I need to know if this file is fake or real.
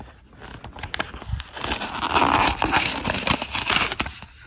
real